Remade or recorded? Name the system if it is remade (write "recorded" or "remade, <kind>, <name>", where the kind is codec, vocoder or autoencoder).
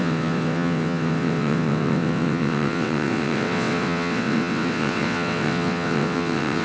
remade, vocoder, WaveNeXt